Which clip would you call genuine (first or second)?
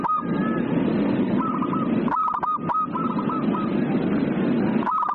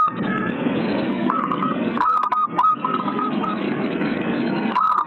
first